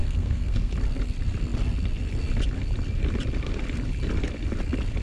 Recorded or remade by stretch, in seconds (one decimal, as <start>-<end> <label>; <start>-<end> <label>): 0.0-0.7 remade; 0.7-5.0 recorded